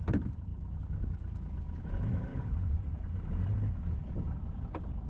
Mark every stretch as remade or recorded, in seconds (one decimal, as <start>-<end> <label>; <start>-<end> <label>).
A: 0.0-2.3 recorded; 2.3-2.8 remade; 2.8-5.1 recorded